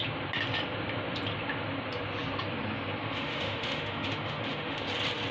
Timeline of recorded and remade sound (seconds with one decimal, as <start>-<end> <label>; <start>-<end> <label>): 0.0-3.0 recorded; 3.0-4.8 remade; 4.8-5.3 recorded